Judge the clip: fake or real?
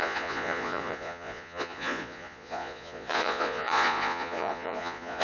fake